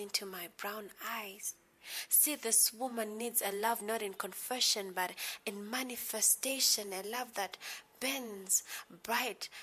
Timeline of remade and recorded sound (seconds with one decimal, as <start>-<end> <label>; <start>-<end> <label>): 0.0-2.9 recorded; 2.9-3.8 remade; 3.8-6.0 recorded; 6.0-9.2 remade; 9.2-9.6 recorded